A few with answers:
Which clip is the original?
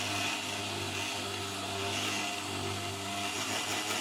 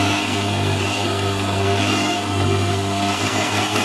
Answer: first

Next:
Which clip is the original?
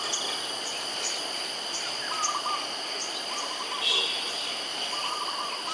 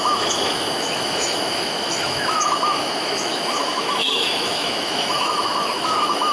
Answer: first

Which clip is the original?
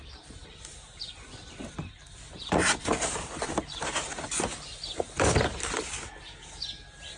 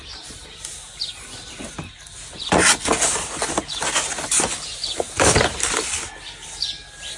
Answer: second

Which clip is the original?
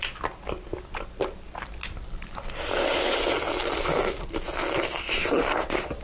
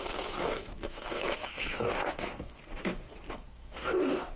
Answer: first